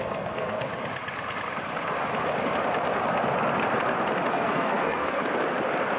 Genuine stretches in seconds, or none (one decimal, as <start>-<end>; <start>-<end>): 0.7-4.3; 5.2-6.0